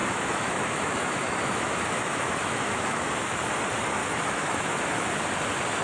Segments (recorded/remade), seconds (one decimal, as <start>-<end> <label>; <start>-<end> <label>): 0.0-3.4 remade; 3.4-4.0 recorded; 4.0-5.1 remade; 5.1-5.8 recorded